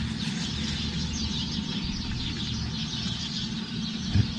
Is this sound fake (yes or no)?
no